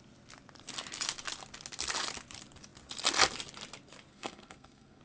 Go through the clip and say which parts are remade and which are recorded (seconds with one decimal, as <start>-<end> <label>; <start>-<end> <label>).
0.0-4.1 recorded; 4.1-5.0 remade